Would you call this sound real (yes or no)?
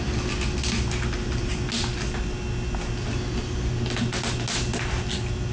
yes